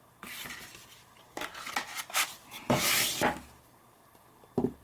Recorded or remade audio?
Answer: remade